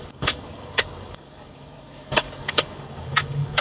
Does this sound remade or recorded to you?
remade